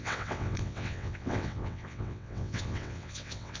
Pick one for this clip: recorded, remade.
remade